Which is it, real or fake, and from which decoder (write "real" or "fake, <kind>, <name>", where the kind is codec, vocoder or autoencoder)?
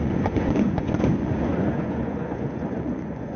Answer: fake, vocoder, Vocos